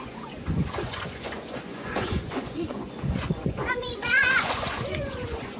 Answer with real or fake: fake